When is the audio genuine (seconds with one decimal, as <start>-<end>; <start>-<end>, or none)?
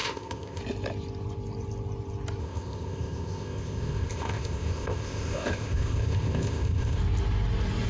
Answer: 0.6-2.4; 7.0-7.9